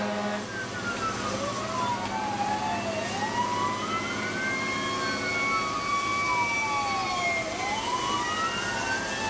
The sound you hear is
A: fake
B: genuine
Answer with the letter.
B